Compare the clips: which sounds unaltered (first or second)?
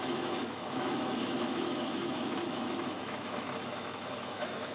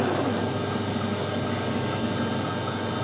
second